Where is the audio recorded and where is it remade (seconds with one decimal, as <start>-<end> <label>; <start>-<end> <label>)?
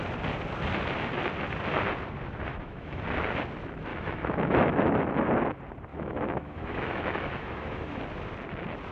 0.0-2.5 recorded; 2.5-3.0 remade; 3.0-3.9 recorded; 3.9-5.3 remade; 5.3-5.9 recorded; 5.9-8.0 remade; 8.0-8.9 recorded